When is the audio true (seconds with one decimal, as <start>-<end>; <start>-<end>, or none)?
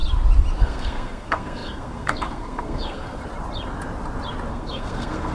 0.0-0.6; 3.2-4.5